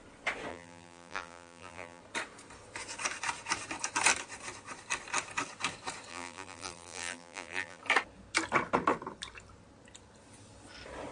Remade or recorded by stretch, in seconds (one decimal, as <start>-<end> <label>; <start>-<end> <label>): 0.0-0.5 recorded; 0.5-2.0 remade; 2.0-6.1 recorded; 6.1-7.8 remade; 7.8-11.1 recorded